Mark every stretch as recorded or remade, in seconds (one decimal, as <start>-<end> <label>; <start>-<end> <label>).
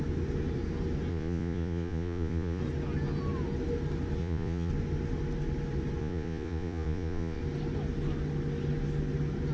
0.0-1.1 recorded; 1.1-2.6 remade; 2.6-4.2 recorded; 4.2-4.7 remade; 4.7-6.0 recorded; 6.0-7.4 remade; 7.4-9.5 recorded